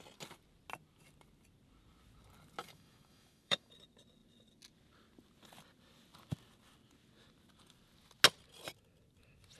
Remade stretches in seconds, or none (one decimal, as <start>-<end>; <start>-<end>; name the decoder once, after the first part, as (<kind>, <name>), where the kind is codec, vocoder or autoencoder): 2.6-3.7 (autoencoder, DAC-VAE)

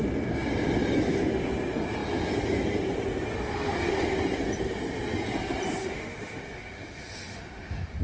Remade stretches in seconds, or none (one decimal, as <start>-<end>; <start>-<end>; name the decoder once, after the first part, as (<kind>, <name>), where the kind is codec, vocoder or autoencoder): 5.8-8.0 (autoencoder, DAC-VAE)